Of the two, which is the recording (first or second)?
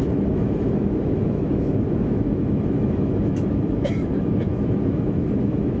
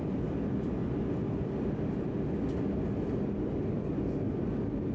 second